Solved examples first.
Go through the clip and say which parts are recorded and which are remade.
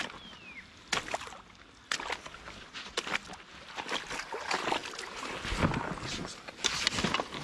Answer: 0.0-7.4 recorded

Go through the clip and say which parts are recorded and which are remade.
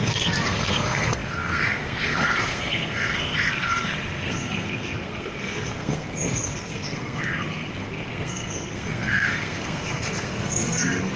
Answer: 0.0-11.2 remade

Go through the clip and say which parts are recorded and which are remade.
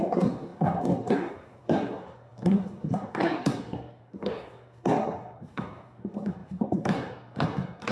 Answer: 0.0-7.9 remade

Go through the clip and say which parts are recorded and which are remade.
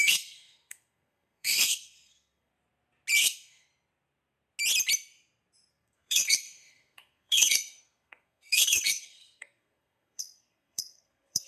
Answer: 0.0-2.5 remade; 2.5-3.2 recorded; 3.2-3.7 remade; 3.7-5.7 recorded; 5.7-11.5 remade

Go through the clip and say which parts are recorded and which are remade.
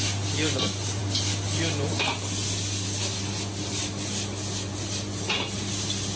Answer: 0.0-6.2 recorded